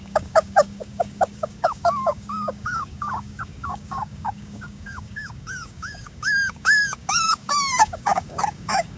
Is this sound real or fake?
fake